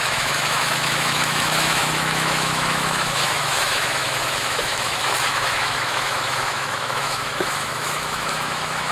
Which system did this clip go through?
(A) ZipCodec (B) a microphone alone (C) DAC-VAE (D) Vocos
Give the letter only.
C